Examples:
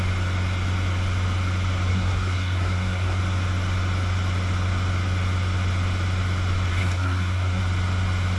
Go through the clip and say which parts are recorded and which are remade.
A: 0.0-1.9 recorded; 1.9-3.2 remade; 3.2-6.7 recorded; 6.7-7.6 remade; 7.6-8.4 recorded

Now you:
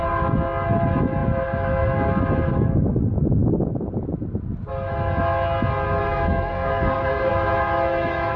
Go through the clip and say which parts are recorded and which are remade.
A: 0.0-6.0 recorded; 6.0-7.3 remade; 7.3-8.4 recorded

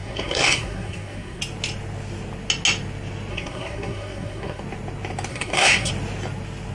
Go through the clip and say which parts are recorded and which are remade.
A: 0.0-1.4 remade; 1.4-3.3 recorded; 3.3-4.6 remade; 4.6-5.3 recorded; 5.3-5.9 remade; 5.9-6.7 recorded

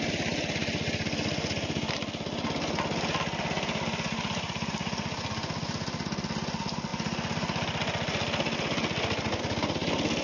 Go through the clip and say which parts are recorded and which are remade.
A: 0.0-10.2 recorded